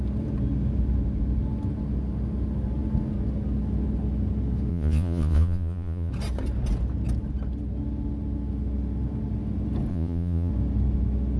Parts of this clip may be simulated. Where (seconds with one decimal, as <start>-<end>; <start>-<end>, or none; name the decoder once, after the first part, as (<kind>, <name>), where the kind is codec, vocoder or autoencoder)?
4.7-6.1 (vocoder, Vocos); 9.9-10.5

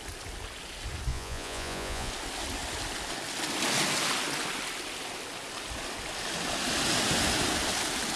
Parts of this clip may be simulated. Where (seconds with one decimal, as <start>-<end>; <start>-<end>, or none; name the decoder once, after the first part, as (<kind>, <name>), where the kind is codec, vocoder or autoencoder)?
1.1-2.1 (vocoder, Vocos)

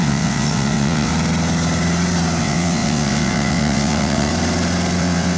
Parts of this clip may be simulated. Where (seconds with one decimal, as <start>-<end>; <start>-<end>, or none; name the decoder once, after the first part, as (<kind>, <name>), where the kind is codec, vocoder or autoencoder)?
0.0-1.1 (vocoder, WaveNeXt); 2.4-4.3; 5.0-5.4

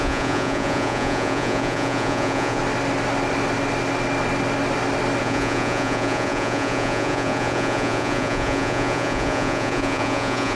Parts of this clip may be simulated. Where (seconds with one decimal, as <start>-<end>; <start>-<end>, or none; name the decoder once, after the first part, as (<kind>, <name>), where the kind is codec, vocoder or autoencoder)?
0.0-2.6 (vocoder, Vocos); 5.2-10.6

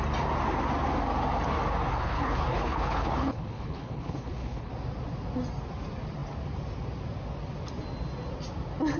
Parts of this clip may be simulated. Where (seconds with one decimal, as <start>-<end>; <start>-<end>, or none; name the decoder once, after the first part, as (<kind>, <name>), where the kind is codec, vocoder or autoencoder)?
1.9-4.7 (codec, HILCodec)

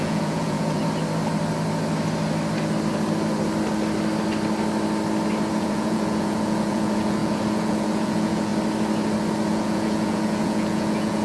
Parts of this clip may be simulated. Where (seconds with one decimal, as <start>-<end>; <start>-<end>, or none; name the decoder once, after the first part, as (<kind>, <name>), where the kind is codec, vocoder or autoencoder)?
0.0-0.8 (vocoder, Vocos); 5.5-8.5; 9.5-11.2